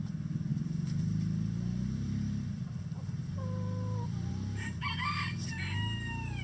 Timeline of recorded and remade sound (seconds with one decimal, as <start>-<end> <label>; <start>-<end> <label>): 0.0-0.5 recorded; 0.5-4.3 remade; 4.3-6.4 recorded